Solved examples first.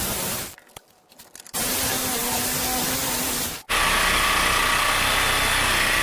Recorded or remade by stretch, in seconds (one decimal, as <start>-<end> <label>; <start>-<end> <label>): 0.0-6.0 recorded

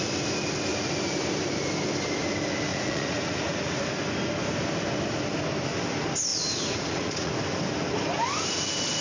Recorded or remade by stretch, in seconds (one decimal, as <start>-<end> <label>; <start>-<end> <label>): 0.0-2.7 recorded; 2.7-3.8 remade; 3.8-6.3 recorded; 6.3-7.3 remade; 7.3-9.0 recorded

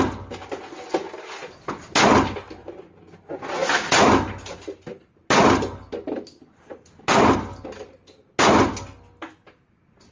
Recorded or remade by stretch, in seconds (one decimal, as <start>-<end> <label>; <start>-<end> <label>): 0.0-10.1 recorded

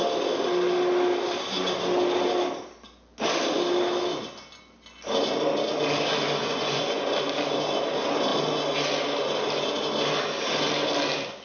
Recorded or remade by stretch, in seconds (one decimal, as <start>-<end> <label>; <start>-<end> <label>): 0.0-6.4 recorded; 6.4-7.0 remade; 7.0-11.4 recorded

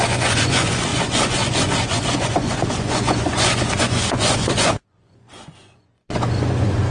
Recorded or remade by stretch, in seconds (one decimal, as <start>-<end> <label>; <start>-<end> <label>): 0.0-6.9 remade

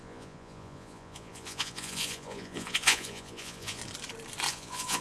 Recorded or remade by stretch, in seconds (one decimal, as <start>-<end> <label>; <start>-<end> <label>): 0.0-3.8 remade; 3.8-4.5 recorded; 4.5-5.0 remade